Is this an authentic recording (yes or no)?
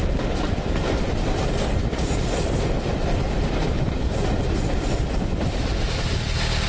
yes